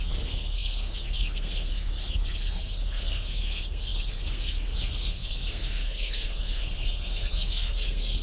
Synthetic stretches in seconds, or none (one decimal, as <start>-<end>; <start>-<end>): 0.0-8.2